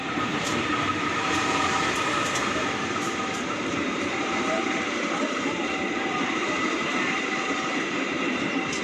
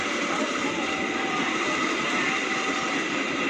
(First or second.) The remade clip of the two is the first